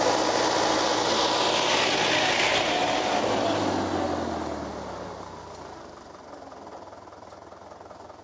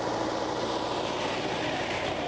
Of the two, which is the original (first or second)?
first